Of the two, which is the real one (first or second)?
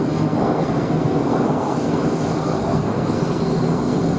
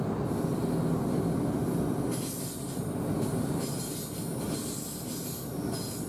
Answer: second